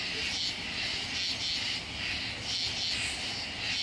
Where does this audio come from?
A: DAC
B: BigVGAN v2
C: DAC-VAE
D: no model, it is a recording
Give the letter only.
D